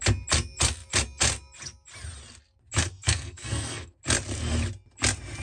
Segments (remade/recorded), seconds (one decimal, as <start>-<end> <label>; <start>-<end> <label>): 0.0-2.8 recorded; 2.8-4.0 remade; 4.0-5.4 recorded